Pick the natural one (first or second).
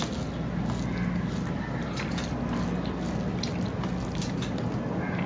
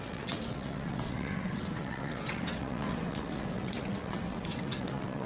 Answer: first